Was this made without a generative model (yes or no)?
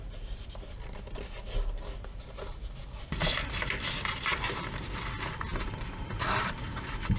yes